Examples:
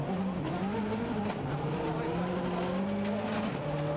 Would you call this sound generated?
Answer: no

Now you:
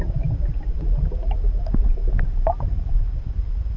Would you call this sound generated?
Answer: no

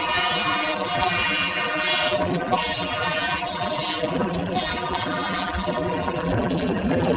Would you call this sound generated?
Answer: yes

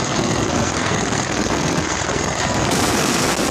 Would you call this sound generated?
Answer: yes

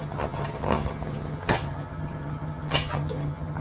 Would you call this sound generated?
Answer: yes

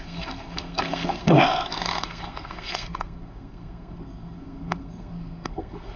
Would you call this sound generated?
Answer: yes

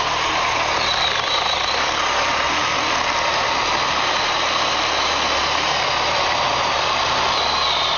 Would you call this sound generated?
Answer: no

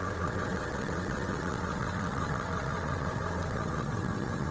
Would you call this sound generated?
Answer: yes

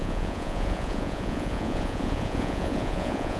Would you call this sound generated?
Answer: yes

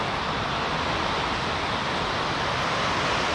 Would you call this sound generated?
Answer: no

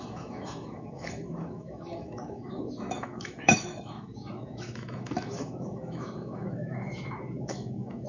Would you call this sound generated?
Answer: yes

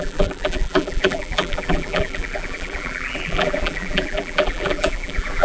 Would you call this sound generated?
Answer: yes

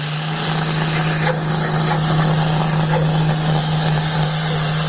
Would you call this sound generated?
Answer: no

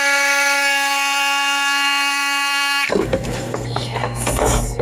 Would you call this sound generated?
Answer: yes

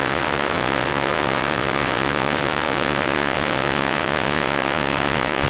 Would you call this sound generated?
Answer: yes